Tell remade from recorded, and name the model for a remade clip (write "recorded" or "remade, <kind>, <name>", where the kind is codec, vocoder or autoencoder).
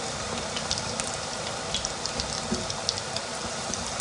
remade, vocoder, BigVGAN v2